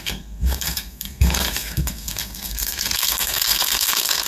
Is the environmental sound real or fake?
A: fake